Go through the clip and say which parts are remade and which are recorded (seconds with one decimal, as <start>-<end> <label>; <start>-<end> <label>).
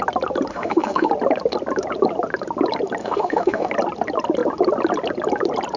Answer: 0.0-0.5 recorded; 0.5-1.1 remade; 1.1-3.0 recorded; 3.0-3.7 remade; 3.7-5.8 recorded